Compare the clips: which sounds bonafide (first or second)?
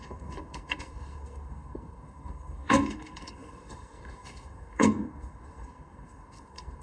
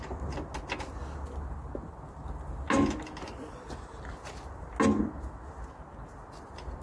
second